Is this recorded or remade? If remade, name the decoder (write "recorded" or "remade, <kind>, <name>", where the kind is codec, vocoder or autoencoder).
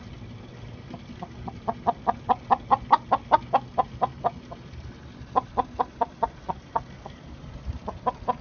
recorded